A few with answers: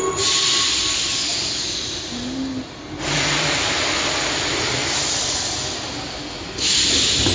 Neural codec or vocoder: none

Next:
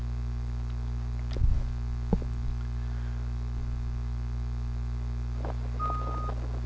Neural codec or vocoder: none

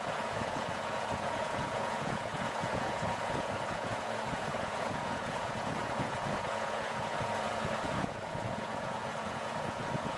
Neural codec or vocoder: vocoder, Vocos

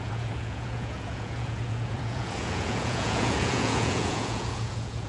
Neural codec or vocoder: vocoder, Vocos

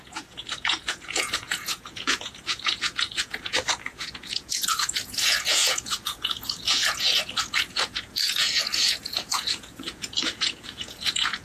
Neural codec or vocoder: vocoder, Vocos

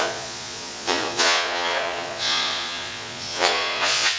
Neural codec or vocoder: vocoder, Vocos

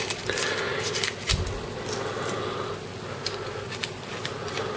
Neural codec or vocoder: none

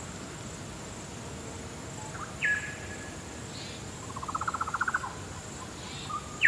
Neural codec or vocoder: none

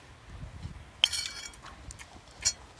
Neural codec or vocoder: none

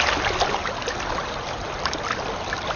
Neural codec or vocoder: none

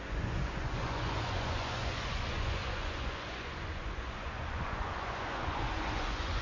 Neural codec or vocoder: vocoder, Vocos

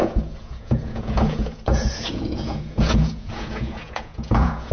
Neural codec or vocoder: vocoder, Vocos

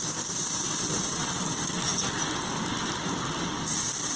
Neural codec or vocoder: none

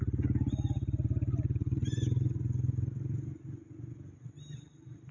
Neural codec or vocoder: none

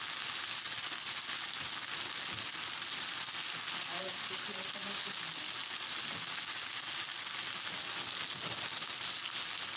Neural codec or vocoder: none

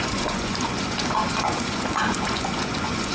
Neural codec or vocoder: vocoder, Vocos